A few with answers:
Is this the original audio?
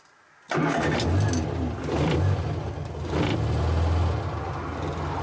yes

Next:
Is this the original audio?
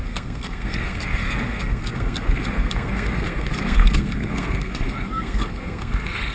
no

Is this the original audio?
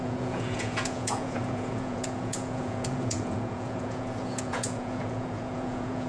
no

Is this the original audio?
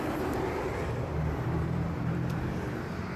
no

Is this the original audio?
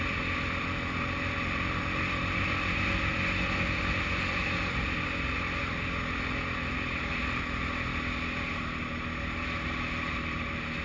yes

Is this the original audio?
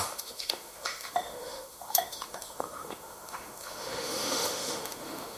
no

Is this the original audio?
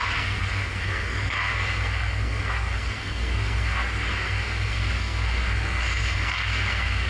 no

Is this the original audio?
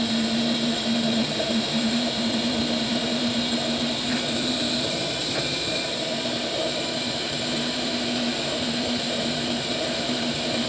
no